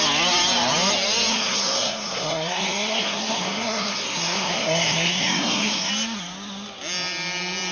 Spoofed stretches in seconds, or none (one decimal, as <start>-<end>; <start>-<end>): 1.3-5.9